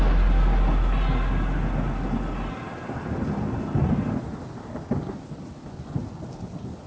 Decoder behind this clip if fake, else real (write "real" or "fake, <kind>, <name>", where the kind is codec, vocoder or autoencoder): real